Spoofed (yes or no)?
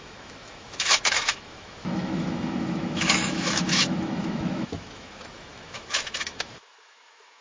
yes